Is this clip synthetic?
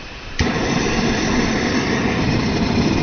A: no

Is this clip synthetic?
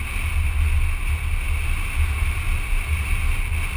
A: no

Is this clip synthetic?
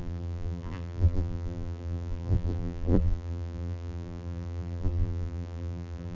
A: yes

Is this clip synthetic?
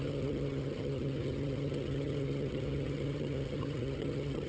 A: yes